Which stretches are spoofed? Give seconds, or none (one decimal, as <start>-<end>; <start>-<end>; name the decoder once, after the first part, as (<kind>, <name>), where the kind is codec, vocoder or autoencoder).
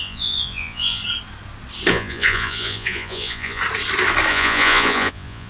0.0-1.0 (vocoder, Vocos); 1.9-3.6; 4.3-5.5